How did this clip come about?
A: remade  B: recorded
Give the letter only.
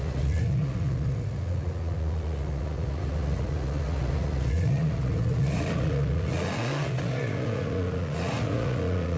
A